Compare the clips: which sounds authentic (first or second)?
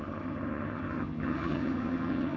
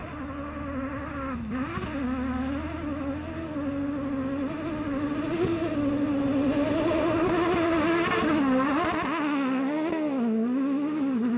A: second